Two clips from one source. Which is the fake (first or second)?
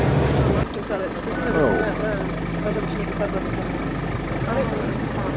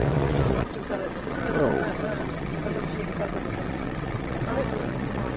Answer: second